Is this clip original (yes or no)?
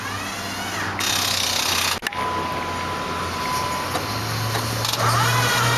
yes